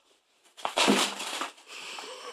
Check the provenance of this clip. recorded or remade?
remade